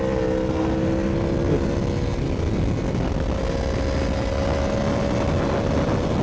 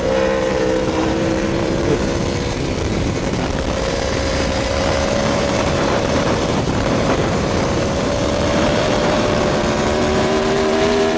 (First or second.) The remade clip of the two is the second